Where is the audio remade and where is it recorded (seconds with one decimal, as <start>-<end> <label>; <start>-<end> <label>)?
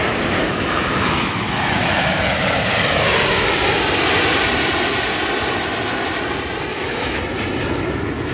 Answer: 0.0-0.4 recorded; 0.4-2.2 remade; 2.2-6.7 recorded; 6.7-7.2 remade; 7.2-8.3 recorded